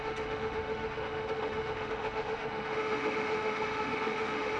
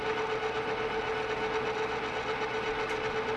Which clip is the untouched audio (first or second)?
second